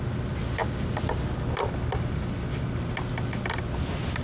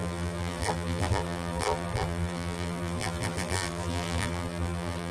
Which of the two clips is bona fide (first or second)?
first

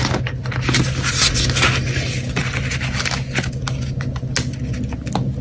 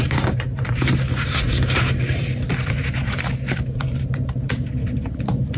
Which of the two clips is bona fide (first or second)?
first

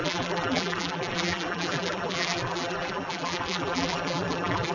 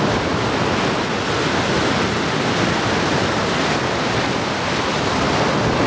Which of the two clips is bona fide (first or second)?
second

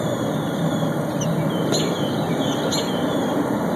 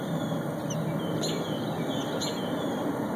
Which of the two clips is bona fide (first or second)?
second